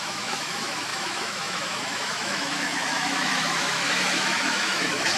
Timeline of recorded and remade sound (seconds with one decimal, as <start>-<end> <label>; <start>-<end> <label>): 0.0-5.2 remade